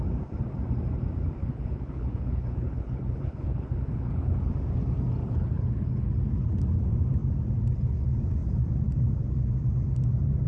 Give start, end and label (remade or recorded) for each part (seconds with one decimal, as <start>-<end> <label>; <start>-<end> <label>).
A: 0.0-1.4 recorded; 1.4-4.5 remade; 4.5-5.2 recorded; 5.2-6.1 remade; 6.1-10.5 recorded

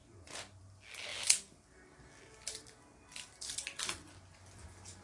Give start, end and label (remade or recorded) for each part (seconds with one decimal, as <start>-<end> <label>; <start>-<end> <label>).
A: 0.0-5.0 recorded